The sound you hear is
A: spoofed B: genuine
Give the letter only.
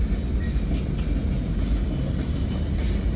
B